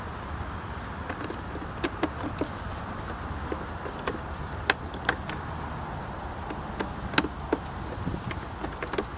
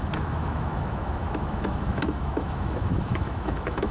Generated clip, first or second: second